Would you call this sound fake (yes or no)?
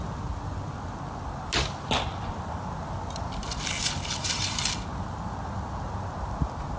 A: no